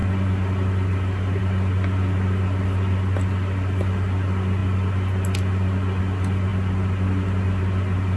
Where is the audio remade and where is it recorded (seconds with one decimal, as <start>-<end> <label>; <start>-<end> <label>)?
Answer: 0.0-8.2 recorded